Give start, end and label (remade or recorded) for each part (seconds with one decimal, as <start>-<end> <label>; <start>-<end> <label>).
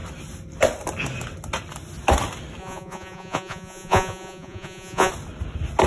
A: 0.0-2.6 recorded; 2.6-5.1 remade; 5.1-5.9 recorded